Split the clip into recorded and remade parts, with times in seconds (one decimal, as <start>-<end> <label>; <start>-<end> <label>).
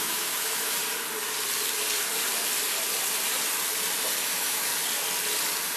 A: 0.0-0.8 remade; 0.8-4.2 recorded; 4.2-4.7 remade; 4.7-5.8 recorded